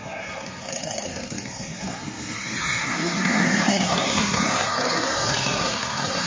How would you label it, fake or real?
fake